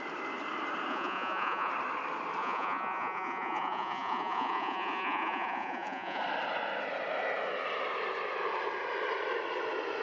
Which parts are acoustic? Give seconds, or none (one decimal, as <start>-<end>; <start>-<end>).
0.0-0.9; 1.7-2.4; 6.2-10.0